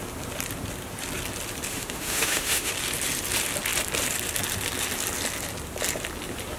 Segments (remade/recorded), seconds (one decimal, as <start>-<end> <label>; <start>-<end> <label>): 0.0-1.7 recorded; 1.7-2.7 remade; 2.7-6.6 recorded